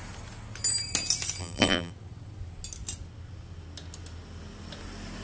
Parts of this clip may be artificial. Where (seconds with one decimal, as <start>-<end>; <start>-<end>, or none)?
1.4-1.9

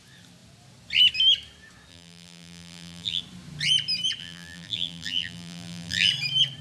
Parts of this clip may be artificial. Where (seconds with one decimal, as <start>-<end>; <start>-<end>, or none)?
1.9-3.2; 4.2-6.1

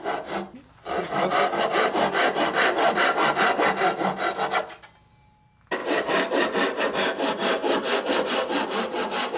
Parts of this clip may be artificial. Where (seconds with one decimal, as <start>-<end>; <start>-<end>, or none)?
1.3-4.6; 5.8-6.8

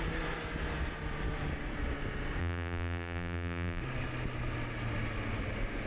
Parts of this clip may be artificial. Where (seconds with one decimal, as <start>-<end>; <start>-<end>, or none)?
2.4-3.8

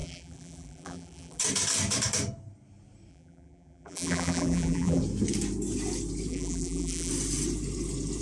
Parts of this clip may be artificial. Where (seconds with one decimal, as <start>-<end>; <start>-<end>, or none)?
0.0-1.4; 3.1-5.0; 6.3-7.1

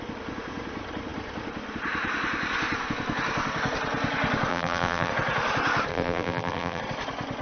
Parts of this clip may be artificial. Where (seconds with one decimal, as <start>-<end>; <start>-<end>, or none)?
4.5-5.1; 5.9-6.8

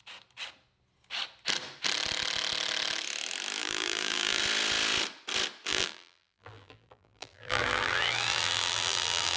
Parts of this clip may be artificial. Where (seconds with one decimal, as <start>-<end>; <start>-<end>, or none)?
3.6-4.4; 5.7-9.4